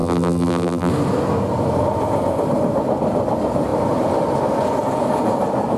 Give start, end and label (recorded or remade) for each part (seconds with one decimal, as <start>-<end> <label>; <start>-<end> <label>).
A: 0.0-0.9 remade; 0.9-5.8 recorded